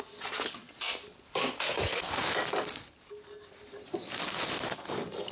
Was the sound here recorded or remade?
remade